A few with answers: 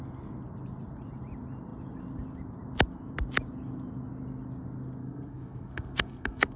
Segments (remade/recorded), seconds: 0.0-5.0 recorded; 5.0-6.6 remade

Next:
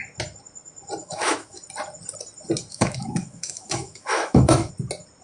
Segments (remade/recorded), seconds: 0.0-1.0 recorded; 1.0-1.6 remade; 1.6-2.7 recorded; 2.7-4.7 remade; 4.7-5.2 recorded

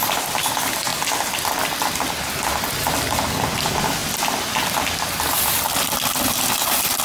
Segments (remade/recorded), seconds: 0.0-7.0 recorded

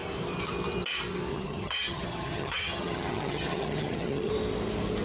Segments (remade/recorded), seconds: 0.0-1.3 recorded; 1.3-4.3 remade; 4.3-5.0 recorded

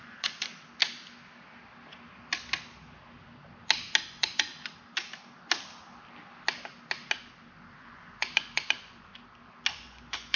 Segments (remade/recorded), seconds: 0.0-0.5 remade; 0.5-4.1 recorded; 4.1-4.5 remade; 4.5-7.8 recorded; 7.8-9.1 remade; 9.1-9.7 recorded; 9.7-10.4 remade

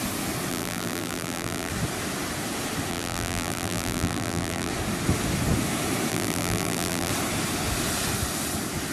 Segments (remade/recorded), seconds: 0.0-0.5 recorded; 0.5-1.7 remade; 1.7-2.9 recorded; 2.9-4.7 remade; 4.7-6.1 recorded; 6.1-7.1 remade; 7.1-8.9 recorded